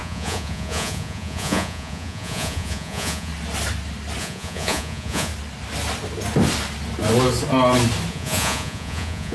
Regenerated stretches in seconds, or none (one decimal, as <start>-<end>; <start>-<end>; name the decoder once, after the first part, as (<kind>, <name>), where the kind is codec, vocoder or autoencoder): 0.0-3.3 (vocoder, Vocos); 4.2-5.3; 8.1-9.3